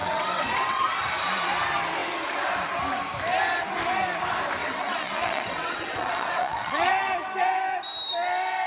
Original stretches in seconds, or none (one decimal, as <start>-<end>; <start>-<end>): 0.8-4.6; 6.9-8.7